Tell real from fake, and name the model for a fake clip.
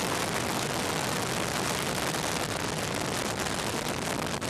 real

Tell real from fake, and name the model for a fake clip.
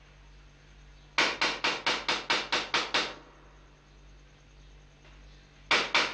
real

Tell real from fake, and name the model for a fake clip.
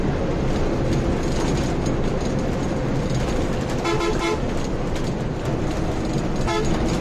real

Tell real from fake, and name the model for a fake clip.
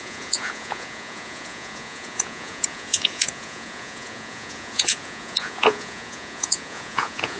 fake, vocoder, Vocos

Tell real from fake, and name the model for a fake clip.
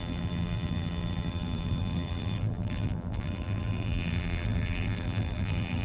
fake, vocoder, BigVGAN v2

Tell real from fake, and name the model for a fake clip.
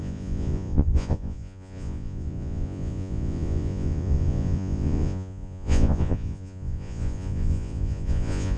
fake, vocoder, Vocos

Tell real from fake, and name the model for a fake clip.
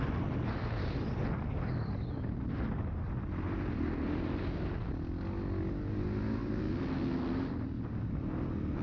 real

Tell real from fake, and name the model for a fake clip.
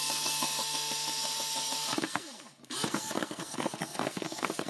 fake, codec, SNAC